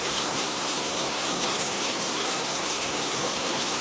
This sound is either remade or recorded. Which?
remade